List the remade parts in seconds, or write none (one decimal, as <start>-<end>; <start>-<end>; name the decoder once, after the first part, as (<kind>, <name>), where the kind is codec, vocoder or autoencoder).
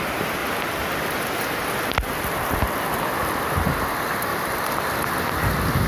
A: 4.3-5.1 (vocoder, BigVGAN v2)